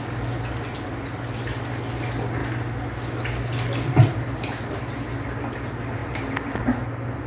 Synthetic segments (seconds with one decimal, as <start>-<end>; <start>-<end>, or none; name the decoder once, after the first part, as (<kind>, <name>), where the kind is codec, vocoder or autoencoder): none